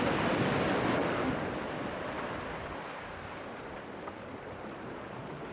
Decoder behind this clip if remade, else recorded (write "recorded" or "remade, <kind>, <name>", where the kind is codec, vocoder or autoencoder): recorded